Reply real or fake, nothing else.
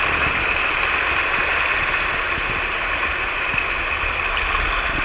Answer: real